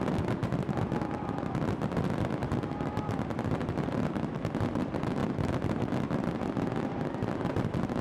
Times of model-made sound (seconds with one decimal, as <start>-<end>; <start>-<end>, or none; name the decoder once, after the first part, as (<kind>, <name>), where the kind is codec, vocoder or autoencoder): 0.0-0.4 (vocoder, BigVGAN v2); 1.0-8.0